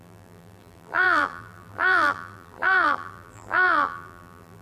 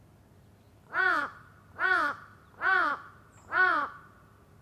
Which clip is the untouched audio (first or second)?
second